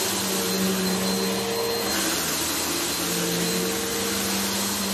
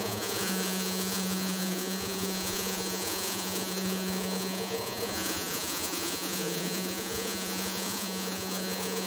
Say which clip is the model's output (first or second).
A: second